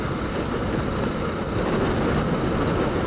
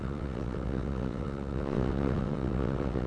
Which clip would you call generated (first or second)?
second